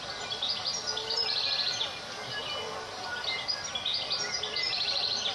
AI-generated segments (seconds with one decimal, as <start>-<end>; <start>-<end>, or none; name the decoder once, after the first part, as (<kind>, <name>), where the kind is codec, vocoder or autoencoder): none